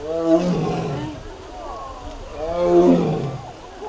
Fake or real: real